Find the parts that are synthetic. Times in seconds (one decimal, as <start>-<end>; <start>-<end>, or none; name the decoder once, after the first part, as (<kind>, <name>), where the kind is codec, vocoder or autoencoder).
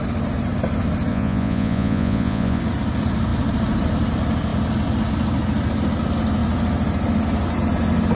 1.1-2.6 (vocoder, Vocos)